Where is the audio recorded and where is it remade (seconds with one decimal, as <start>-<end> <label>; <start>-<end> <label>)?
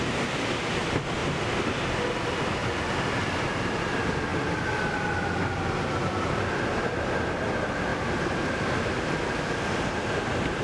0.0-2.6 recorded; 2.6-3.8 remade; 3.8-7.9 recorded; 7.9-9.1 remade; 9.1-10.6 recorded